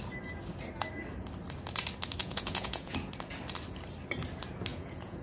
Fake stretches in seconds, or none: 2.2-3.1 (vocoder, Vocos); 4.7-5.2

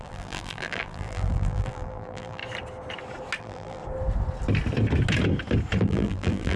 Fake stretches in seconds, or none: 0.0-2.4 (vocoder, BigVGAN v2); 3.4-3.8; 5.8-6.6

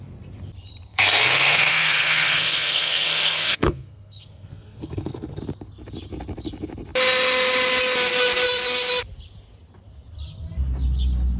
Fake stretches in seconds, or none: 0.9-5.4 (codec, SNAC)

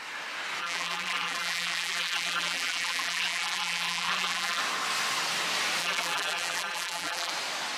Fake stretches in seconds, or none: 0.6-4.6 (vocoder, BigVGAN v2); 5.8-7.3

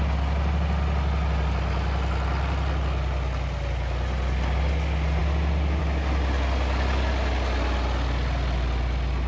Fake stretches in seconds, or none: none